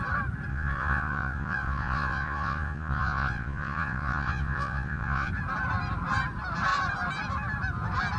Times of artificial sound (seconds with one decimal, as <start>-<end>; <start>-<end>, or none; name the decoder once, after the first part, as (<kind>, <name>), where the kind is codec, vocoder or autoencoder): 0.5-5.3 (vocoder, Vocos)